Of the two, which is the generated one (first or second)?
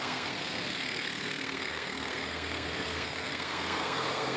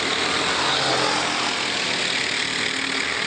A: first